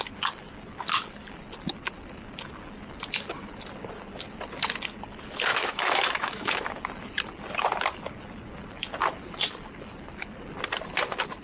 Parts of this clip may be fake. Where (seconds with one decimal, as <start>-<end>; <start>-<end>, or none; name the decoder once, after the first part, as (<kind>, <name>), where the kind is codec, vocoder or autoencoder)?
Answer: 5.5-6.6 (autoencoder, DAC-VAE)